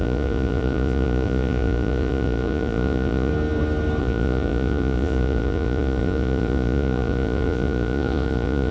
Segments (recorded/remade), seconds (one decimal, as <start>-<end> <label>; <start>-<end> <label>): 0.0-3.3 remade; 3.3-4.0 recorded; 4.0-8.7 remade